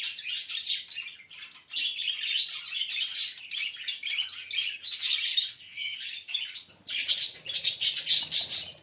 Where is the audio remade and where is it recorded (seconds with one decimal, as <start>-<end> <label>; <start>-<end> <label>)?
0.0-5.5 recorded; 5.5-6.0 remade; 6.0-8.8 recorded